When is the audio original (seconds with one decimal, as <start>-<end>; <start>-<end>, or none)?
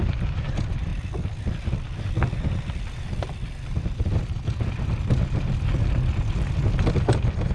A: 0.0-7.5